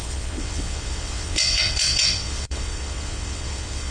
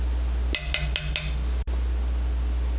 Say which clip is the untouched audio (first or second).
second